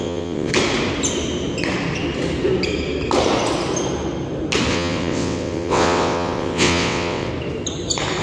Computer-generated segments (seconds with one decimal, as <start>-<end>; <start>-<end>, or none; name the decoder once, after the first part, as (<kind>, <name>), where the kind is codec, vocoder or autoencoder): 0.0-0.5 (vocoder, WaveNeXt); 4.7-7.3